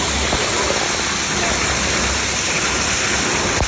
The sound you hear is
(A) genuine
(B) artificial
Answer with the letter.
A